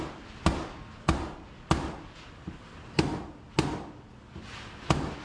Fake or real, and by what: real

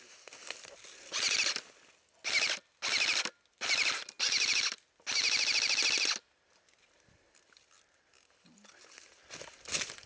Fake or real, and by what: real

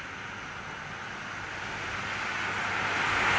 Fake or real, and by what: real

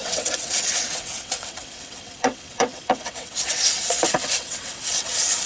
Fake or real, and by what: fake, vocoder, WaveNeXt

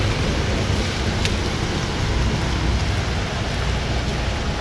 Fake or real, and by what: real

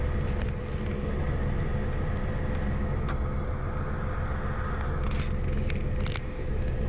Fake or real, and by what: real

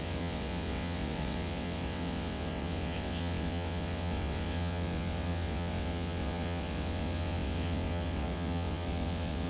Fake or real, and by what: fake, vocoder, WaveNeXt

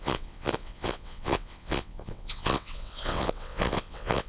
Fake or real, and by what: fake, vocoder, WaveNeXt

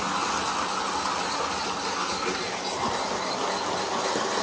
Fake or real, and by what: real